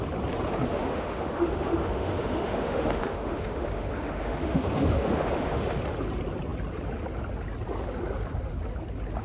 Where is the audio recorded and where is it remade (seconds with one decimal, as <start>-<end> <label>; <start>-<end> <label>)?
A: 0.0-0.7 recorded; 0.7-5.8 remade; 5.8-9.2 recorded